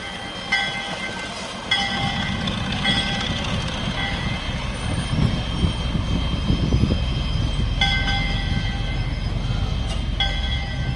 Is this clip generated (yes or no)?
no